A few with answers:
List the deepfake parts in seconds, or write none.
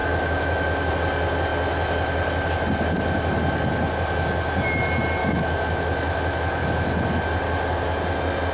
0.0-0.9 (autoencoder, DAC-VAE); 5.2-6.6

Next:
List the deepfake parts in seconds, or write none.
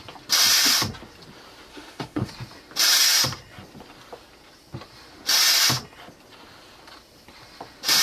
1.7-2.3 (autoencoder, DAC-VAE)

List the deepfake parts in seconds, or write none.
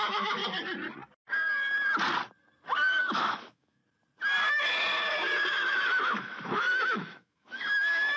0.0-0.4 (autoencoder, DAC-VAE); 3.0-3.8; 5.5-8.2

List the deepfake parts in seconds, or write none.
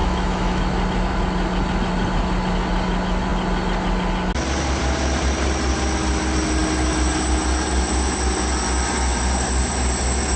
0.0-0.6 (autoencoder, DAC-VAE)